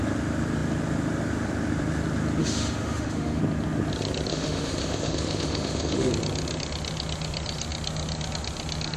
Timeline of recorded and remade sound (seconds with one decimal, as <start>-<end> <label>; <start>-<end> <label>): 0.0-2.4 recorded; 2.4-3.4 remade; 3.4-4.3 recorded; 4.3-6.1 remade; 6.1-9.0 recorded